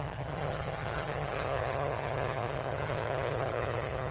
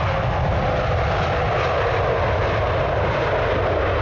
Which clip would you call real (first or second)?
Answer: second